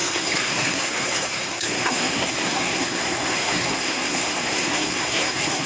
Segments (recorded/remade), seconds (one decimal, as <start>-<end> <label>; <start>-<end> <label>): 0.0-5.7 remade